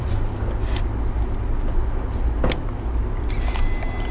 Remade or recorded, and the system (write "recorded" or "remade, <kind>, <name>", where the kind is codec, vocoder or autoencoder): recorded